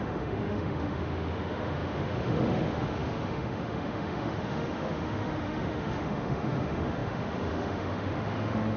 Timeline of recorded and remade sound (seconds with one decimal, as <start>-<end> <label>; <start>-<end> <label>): 0.0-8.8 remade